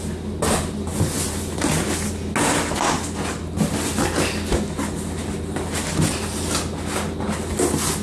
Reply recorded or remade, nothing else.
recorded